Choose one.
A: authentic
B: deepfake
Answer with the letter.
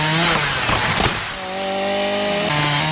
A